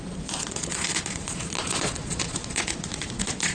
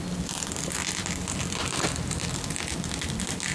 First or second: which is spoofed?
first